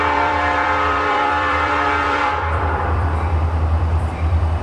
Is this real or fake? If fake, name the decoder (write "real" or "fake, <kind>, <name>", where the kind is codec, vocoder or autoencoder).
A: fake, vocoder, BigVGAN v2